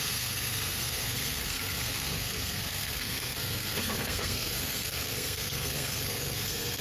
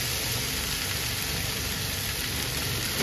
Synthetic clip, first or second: first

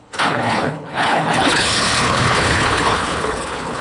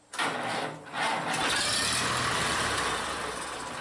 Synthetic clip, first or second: first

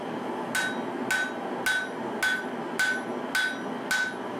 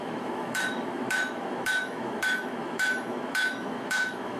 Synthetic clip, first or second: second